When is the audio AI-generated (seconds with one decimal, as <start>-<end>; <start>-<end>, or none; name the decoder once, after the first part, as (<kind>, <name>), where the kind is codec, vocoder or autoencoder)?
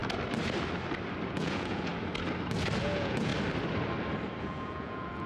1.3-1.9 (vocoder, Vocos); 2.8-3.3; 4.4-5.3